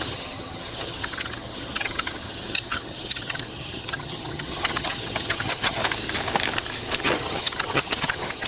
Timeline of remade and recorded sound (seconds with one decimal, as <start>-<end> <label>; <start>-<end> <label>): 0.0-5.8 remade; 5.8-7.0 recorded; 7.0-8.5 remade